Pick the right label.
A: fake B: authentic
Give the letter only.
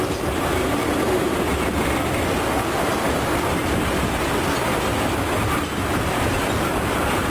B